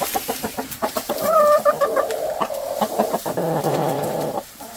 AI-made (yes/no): yes